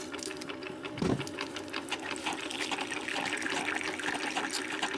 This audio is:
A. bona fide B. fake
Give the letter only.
A